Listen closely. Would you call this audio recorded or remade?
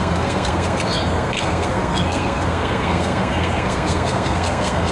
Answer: remade